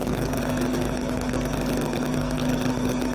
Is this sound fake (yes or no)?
yes